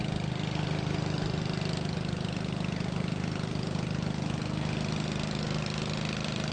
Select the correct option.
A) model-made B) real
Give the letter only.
B